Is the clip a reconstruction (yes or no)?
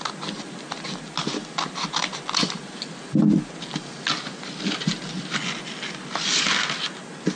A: no